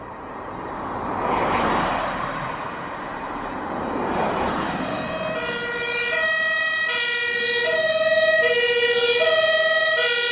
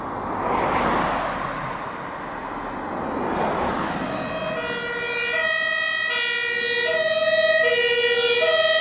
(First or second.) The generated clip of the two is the first